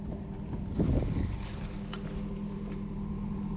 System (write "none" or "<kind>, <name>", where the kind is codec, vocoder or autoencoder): none